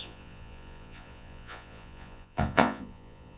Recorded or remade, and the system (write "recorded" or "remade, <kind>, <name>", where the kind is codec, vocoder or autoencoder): remade, vocoder, Vocos